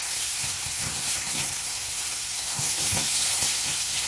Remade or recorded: remade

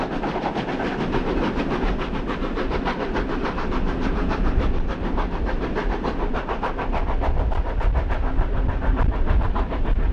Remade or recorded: recorded